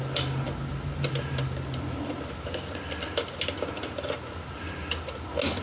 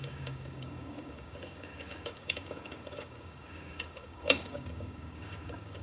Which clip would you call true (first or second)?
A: first